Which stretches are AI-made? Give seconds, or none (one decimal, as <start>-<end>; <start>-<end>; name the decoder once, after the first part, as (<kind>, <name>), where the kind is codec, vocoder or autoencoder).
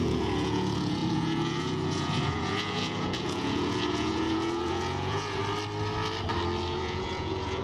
0.0-5.4 (vocoder, Vocos); 6.7-7.6